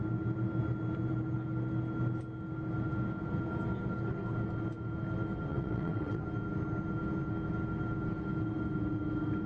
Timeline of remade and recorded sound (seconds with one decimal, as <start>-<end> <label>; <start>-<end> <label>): 0.0-5.5 recorded; 5.5-6.2 remade; 6.2-9.5 recorded